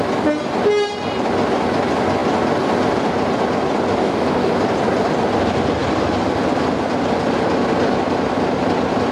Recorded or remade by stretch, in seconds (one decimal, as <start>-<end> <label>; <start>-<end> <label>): 0.0-4.0 recorded; 4.0-4.5 remade; 4.5-9.1 recorded